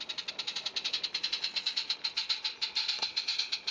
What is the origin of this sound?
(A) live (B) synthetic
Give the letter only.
A